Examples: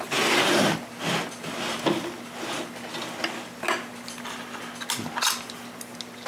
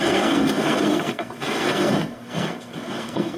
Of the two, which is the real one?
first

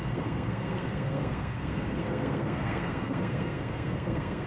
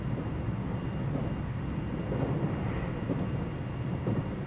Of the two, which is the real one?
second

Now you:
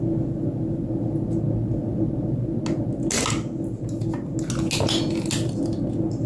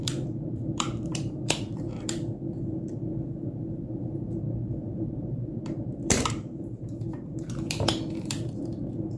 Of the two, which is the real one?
first